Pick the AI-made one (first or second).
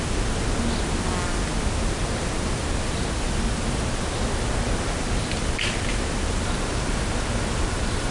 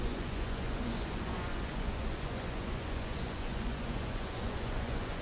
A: second